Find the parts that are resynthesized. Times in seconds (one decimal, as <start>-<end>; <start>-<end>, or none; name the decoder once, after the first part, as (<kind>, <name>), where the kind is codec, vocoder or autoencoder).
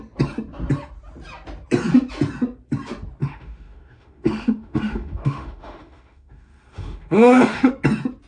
3.2-7.7 (autoencoder, DAC-VAE)